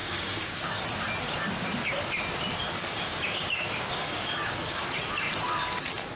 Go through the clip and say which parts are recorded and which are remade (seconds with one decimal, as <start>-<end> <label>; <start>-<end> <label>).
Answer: 0.0-0.8 remade; 0.8-2.5 recorded; 2.5-4.8 remade; 4.8-6.2 recorded